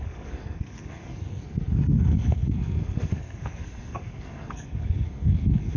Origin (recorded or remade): remade